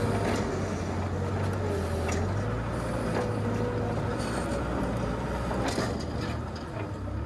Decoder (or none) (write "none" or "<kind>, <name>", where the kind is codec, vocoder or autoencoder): none